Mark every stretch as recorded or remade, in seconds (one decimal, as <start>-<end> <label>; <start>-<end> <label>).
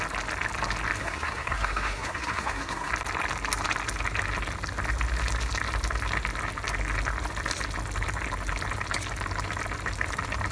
0.0-1.0 recorded; 1.0-2.9 remade; 2.9-10.5 recorded